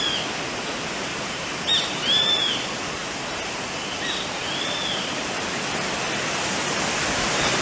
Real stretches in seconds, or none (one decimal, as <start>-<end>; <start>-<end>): 0.0-1.1; 1.6-7.6